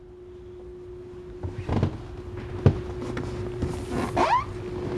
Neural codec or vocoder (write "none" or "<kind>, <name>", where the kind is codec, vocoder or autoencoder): none